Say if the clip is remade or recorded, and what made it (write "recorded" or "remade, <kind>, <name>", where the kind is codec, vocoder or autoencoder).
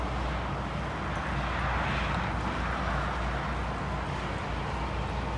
recorded